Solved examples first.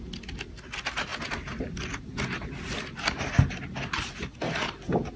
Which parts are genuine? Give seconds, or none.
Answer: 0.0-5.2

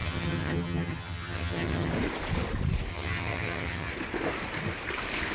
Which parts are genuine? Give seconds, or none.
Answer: 1.9-2.9; 3.9-5.3